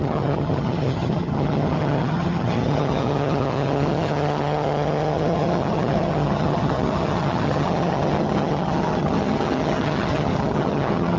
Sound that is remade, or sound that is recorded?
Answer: remade